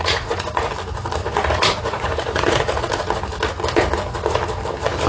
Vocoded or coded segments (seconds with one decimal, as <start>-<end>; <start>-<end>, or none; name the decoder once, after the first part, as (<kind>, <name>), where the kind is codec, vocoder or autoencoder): 0.0-0.7 (vocoder, Vocos); 1.2-2.8